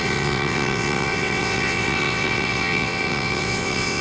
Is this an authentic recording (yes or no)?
no